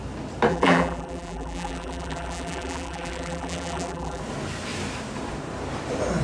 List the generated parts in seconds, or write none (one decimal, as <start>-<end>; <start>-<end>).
0.5-4.2